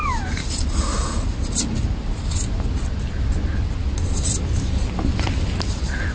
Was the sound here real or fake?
real